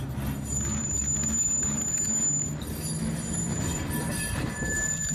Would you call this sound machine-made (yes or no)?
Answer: no